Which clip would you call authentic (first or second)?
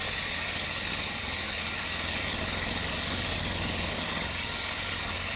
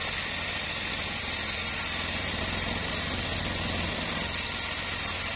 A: second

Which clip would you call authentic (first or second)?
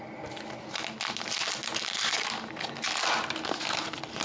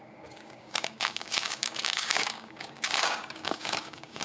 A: first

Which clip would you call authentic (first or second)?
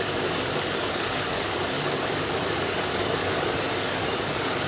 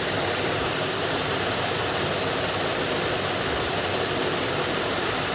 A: second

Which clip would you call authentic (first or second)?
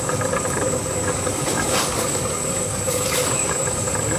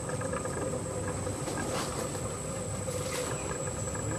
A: second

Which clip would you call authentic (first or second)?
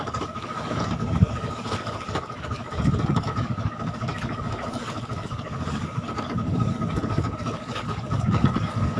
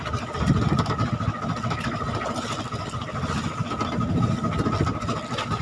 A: second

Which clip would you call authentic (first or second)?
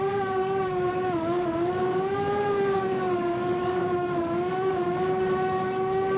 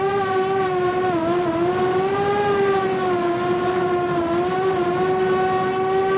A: second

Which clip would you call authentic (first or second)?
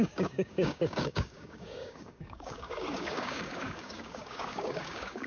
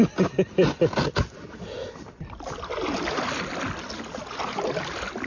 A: second